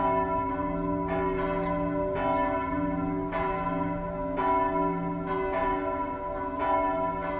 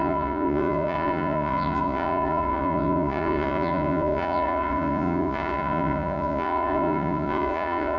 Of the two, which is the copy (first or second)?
second